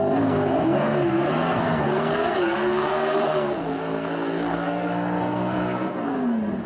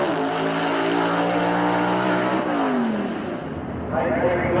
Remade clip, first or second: first